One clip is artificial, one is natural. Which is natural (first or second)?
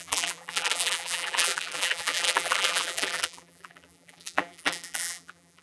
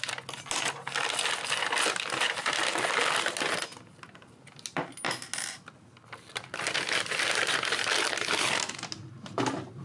second